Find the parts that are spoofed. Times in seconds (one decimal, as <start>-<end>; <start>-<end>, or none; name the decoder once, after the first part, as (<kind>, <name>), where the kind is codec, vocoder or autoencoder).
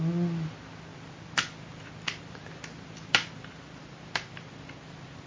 none